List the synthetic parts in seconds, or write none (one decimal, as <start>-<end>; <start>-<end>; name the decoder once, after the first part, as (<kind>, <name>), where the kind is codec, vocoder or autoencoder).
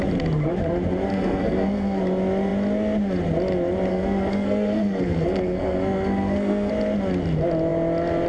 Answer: 1.1-2.0 (codec, SNAC); 3.9-6.7